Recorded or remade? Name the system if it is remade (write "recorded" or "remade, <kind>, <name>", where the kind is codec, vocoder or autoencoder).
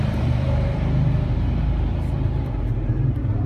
remade, vocoder, BigVGAN v2